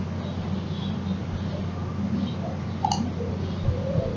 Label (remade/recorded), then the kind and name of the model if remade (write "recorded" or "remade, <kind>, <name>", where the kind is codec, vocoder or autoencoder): recorded